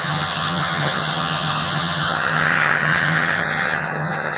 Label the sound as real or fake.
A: fake